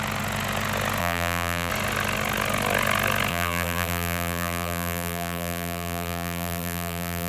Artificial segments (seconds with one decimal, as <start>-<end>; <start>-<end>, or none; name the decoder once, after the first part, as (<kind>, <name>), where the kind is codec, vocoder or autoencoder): 1.0-1.7 (vocoder, BigVGAN v2); 3.3-7.3